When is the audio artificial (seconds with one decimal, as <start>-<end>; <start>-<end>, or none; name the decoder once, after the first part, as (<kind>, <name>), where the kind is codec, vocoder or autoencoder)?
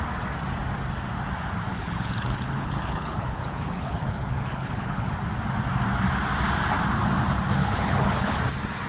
1.7-5.1 (codec, HILCodec); 7.6-8.4